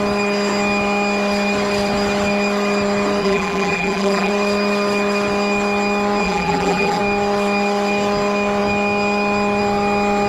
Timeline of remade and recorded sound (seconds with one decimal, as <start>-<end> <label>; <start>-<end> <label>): 0.0-3.2 recorded; 3.2-4.3 remade; 4.3-6.2 recorded; 6.2-7.0 remade; 7.0-10.3 recorded